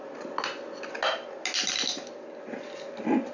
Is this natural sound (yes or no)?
yes